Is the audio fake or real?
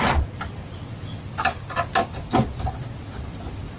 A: real